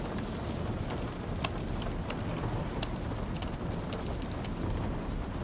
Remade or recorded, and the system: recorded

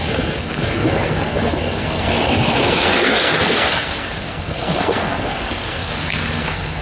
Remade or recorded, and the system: remade, codec, SNAC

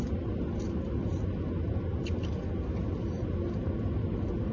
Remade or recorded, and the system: recorded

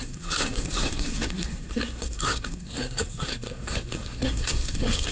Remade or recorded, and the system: remade, codec, SNAC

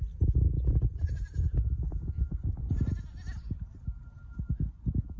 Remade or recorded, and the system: recorded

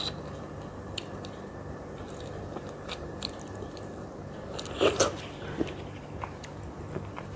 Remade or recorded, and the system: recorded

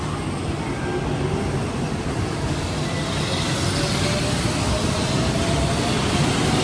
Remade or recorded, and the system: recorded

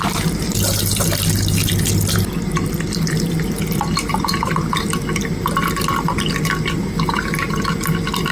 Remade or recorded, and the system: recorded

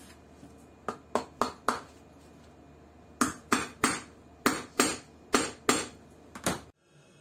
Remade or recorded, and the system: recorded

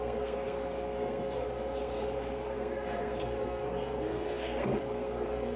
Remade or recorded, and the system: remade, codec, SNAC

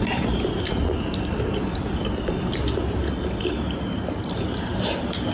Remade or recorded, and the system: recorded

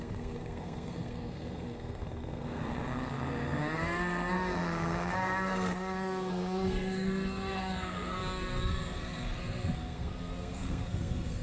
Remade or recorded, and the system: remade, codec, SNAC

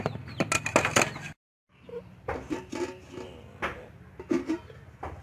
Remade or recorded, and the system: recorded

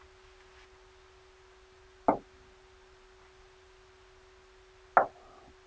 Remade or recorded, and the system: recorded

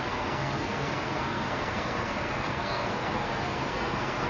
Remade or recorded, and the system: remade, codec, SNAC